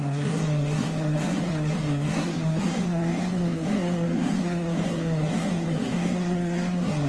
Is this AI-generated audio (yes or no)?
yes